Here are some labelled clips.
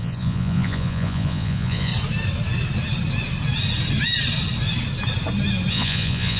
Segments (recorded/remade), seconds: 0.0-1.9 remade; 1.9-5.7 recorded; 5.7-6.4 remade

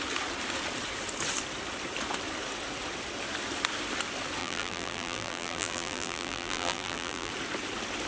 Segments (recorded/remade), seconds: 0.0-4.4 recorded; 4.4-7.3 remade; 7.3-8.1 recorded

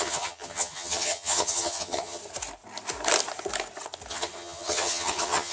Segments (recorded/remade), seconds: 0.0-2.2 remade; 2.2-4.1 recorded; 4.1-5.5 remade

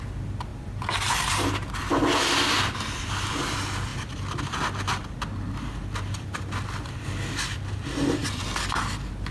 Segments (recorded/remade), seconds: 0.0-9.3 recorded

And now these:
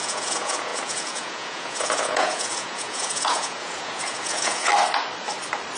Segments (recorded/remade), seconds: 0.0-4.7 remade; 4.7-5.8 recorded

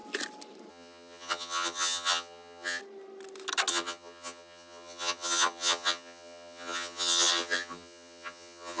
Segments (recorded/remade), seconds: 0.0-0.7 recorded; 0.7-2.8 remade; 2.8-3.7 recorded; 3.7-8.8 remade

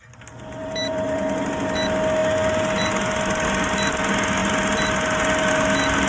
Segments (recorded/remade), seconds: 0.0-0.6 recorded; 0.6-1.5 remade; 1.5-6.1 recorded

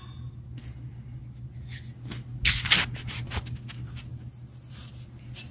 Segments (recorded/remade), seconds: 0.0-5.5 recorded